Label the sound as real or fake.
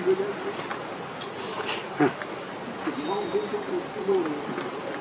real